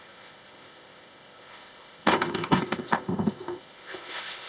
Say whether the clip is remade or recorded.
remade